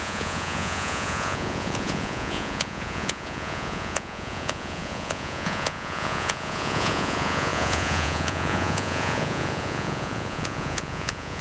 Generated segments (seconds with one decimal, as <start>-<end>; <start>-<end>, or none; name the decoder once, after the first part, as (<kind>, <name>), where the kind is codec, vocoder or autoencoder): 0.0-11.4 (vocoder, Vocos)